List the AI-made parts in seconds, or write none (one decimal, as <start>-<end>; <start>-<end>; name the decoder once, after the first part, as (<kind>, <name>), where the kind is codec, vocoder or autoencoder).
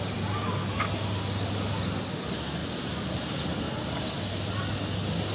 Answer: none